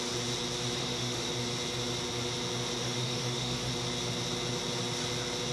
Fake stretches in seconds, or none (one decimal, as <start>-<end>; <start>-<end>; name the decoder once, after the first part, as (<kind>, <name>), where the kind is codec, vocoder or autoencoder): 0.8-1.3 (autoencoder, DAC-VAE); 2.8-3.7